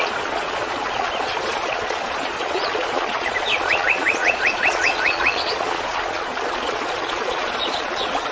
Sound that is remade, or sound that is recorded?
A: remade